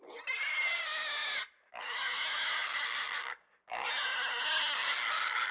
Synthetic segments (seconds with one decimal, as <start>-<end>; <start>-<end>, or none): none